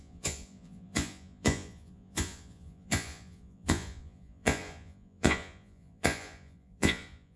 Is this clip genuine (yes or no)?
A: no